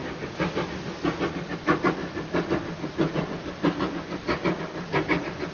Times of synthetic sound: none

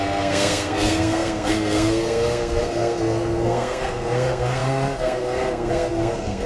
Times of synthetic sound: 0.0-6.5 (codec, SNAC)

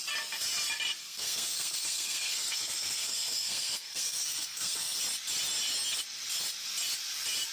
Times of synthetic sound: 1.0-5.0 (codec, SNAC)

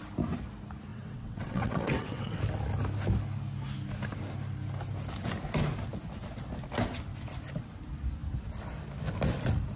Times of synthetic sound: 0.9-2.4 (vocoder, WaveNeXt)

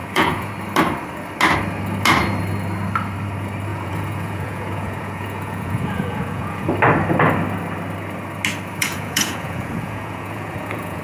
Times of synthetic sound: 0.0-0.5 (vocoder, Vocos); 3.7-6.7; 8.8-11.0